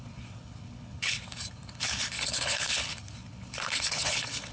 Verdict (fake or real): fake